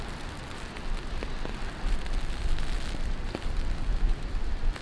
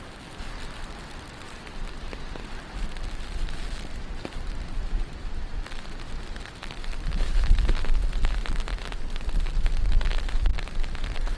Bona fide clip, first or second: first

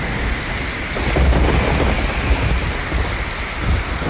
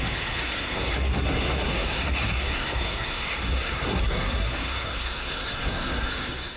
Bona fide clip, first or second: first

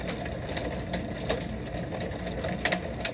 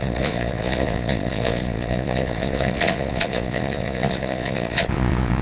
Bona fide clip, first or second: first